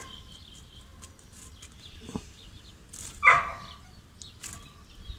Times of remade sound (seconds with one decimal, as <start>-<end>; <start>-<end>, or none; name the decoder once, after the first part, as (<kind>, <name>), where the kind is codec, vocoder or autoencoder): none